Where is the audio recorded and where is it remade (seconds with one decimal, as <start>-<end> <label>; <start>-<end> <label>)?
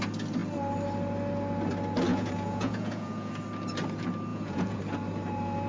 0.0-2.1 recorded; 2.1-3.3 remade; 3.3-4.3 recorded; 4.3-4.8 remade; 4.8-5.7 recorded